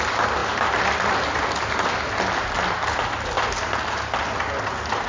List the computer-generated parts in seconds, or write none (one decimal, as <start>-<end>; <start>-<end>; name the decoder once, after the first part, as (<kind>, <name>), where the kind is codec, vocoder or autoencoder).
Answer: none